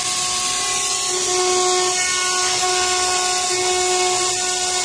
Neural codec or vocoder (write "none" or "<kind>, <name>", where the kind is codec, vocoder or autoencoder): none